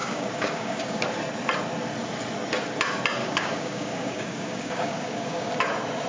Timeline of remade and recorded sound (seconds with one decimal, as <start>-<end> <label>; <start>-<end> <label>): 0.0-1.0 remade; 1.0-3.2 recorded; 3.2-5.5 remade; 5.5-6.1 recorded